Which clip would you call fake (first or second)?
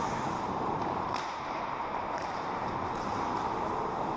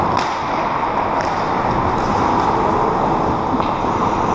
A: first